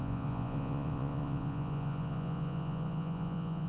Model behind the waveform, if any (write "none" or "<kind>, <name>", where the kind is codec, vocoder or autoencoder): vocoder, Vocos